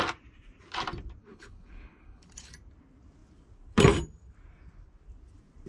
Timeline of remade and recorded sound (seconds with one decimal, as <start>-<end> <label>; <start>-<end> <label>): 0.0-1.2 recorded; 1.2-2.5 remade; 2.5-5.7 recorded